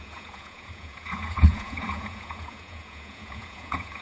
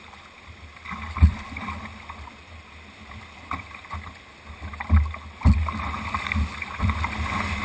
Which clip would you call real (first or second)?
second